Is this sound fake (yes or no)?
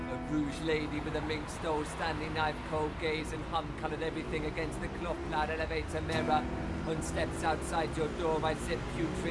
no